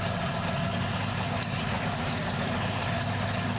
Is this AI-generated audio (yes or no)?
no